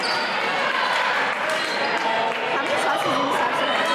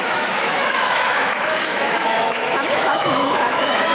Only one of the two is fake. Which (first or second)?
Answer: second